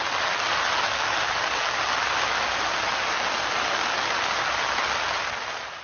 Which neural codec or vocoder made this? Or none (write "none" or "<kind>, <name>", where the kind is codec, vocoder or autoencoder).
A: none